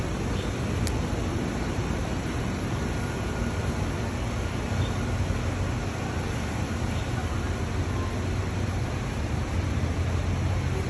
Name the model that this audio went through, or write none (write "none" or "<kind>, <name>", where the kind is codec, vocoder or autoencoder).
none